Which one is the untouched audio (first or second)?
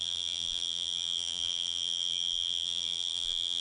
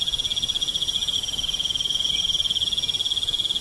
second